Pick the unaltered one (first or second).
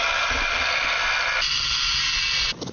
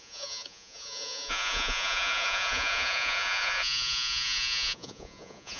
first